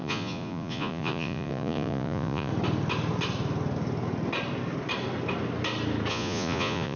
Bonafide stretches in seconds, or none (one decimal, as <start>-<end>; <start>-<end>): 2.5-6.1